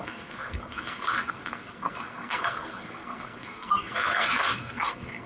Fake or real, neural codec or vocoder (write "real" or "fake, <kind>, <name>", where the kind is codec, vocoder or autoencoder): fake, codec, SNAC